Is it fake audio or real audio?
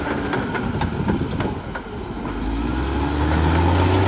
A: real